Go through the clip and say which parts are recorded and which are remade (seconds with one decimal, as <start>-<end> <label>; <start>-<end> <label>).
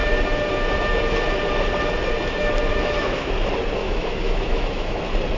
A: 0.0-2.7 recorded; 2.7-3.3 remade; 3.3-3.8 recorded; 3.8-5.0 remade; 5.0-5.4 recorded